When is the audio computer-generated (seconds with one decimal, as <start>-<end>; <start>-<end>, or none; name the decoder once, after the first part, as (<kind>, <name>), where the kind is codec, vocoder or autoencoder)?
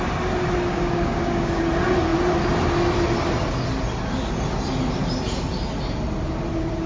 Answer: 0.7-1.6 (codec, DAC)